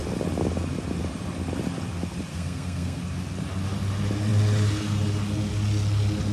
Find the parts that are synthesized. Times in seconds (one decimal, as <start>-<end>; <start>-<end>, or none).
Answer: 2.3-3.0